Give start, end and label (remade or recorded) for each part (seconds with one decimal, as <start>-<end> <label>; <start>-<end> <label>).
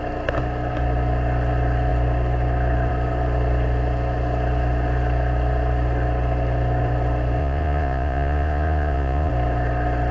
0.0-7.4 recorded; 7.4-9.3 remade; 9.3-10.1 recorded